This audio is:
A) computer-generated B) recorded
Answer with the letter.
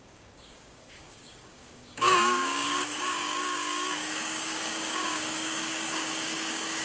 A